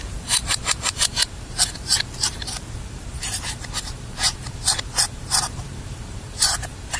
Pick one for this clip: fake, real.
fake